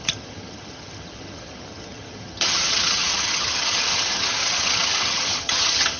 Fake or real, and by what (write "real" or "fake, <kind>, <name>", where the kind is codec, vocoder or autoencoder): fake, vocoder, HiFi-GAN